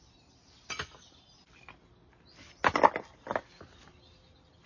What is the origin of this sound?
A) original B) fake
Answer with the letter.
A